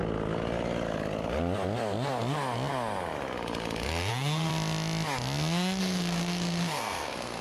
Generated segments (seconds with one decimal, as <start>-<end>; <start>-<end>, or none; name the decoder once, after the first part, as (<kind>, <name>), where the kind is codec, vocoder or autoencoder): 4.1-4.5 (codec, SNAC); 5.8-7.4